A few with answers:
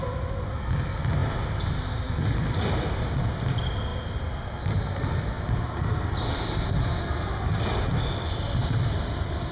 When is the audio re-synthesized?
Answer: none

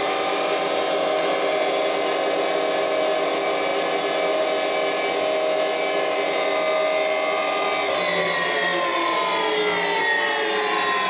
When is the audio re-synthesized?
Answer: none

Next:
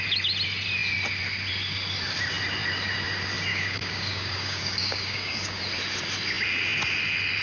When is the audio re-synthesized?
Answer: 3.5-5.6

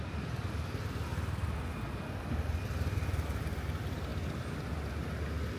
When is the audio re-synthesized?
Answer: none

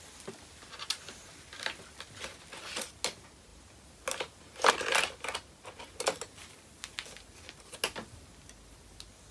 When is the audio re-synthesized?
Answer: none

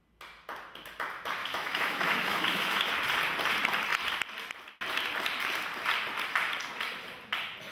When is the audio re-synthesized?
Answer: 1.4-2.9

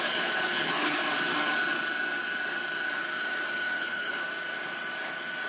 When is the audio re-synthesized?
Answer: 0.0-1.0; 3.8-4.2